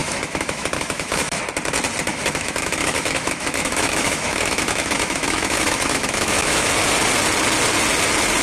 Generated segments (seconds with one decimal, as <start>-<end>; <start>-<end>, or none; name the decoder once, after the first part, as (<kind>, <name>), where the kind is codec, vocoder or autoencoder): 0.0-1.4 (autoencoder, DAC-VAE); 2.1-6.7